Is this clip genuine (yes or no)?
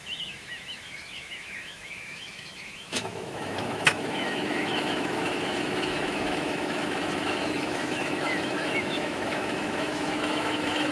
no